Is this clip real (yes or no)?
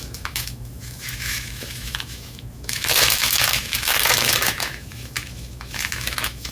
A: no